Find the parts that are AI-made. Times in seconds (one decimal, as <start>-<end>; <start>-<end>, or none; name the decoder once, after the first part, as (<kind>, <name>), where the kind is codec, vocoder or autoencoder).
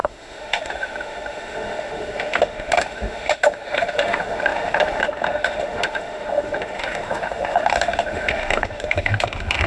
0.0-9.7 (autoencoder, DAC-VAE)